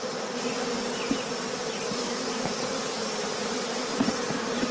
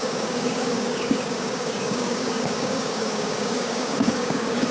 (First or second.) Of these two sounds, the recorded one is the first